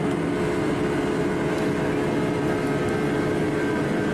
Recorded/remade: recorded